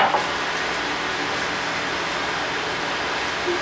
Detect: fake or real real